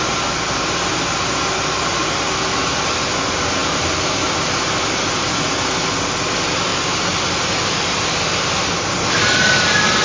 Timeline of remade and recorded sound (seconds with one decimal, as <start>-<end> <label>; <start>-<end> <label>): 0.0-3.6 recorded; 3.6-5.5 remade; 5.5-6.7 recorded; 6.7-8.4 remade; 8.4-10.0 recorded